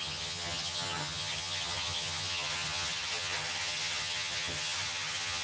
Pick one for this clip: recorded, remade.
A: remade